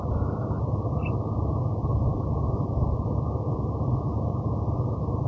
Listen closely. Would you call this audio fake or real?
real